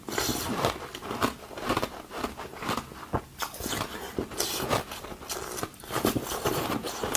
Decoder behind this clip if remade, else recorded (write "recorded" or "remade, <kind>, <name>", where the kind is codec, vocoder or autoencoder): recorded